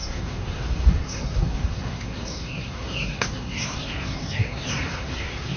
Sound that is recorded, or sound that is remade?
remade